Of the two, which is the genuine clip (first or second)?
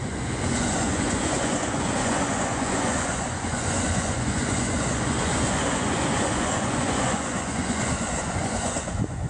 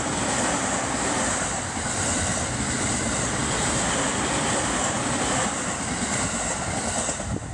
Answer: second